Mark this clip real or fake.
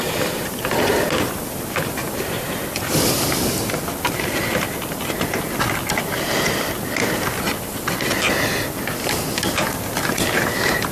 real